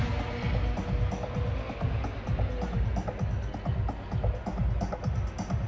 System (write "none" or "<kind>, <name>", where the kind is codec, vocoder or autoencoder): none